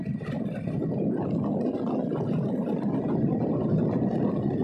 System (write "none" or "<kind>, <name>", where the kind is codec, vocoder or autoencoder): none